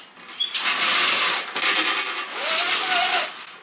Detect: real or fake real